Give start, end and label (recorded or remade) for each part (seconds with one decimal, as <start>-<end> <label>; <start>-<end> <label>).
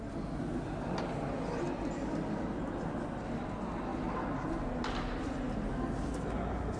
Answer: 0.0-6.8 recorded